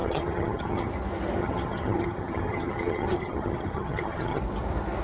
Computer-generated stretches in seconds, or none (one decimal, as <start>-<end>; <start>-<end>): 0.0-0.9; 1.4-4.4